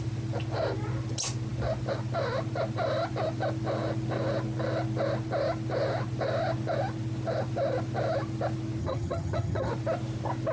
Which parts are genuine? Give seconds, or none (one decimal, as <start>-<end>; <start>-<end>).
0.0-8.8; 9.7-10.5